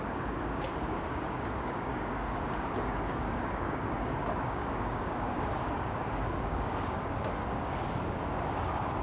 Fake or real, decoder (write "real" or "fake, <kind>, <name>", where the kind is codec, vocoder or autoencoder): fake, codec, DAC